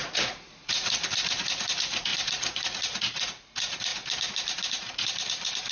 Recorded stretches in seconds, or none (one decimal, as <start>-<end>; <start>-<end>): 3.9-4.7